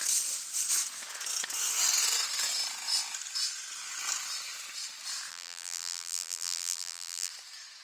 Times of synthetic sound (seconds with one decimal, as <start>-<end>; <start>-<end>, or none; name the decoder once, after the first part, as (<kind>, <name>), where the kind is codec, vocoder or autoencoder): 5.3-7.3 (vocoder, BigVGAN v2)